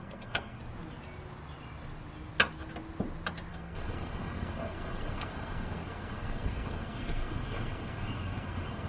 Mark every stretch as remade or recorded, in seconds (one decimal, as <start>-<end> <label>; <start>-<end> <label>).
0.0-0.6 remade; 0.6-3.5 recorded; 3.5-8.9 remade